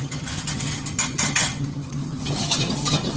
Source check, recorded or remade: remade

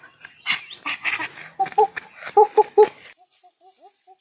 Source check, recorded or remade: recorded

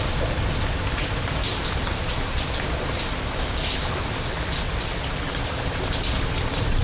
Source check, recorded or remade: recorded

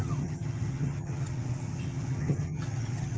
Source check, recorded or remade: remade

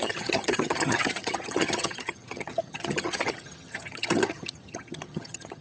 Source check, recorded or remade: remade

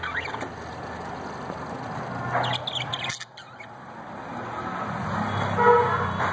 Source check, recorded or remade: recorded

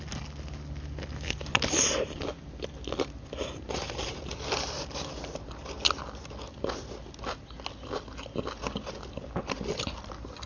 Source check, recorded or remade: recorded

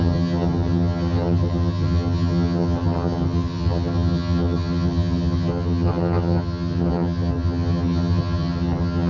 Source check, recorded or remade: remade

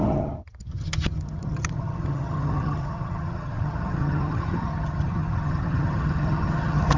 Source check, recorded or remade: remade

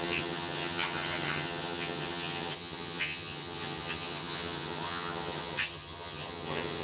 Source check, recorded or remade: remade